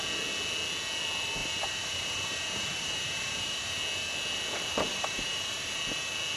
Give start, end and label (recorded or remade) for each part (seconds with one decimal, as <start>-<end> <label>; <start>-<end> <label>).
0.0-1.4 recorded; 1.4-3.8 remade; 3.8-4.9 recorded; 4.9-5.8 remade; 5.8-6.4 recorded